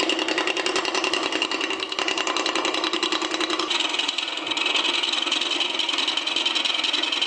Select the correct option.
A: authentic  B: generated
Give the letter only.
A